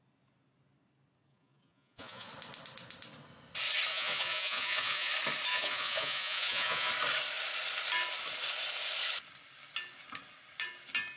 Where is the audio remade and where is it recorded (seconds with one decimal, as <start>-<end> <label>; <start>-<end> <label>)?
0.0-1.3 recorded; 1.3-2.3 remade; 2.3-3.9 recorded; 3.9-5.1 remade; 5.1-5.5 recorded; 5.5-6.9 remade; 6.9-11.2 recorded

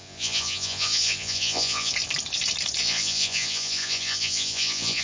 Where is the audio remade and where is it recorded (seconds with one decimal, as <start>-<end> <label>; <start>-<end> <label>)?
0.0-1.9 remade; 1.9-2.8 recorded; 2.8-5.0 remade